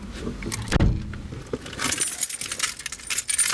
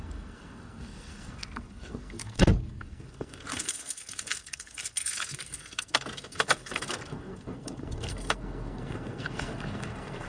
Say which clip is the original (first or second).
first